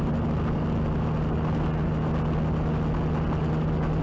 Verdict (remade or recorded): recorded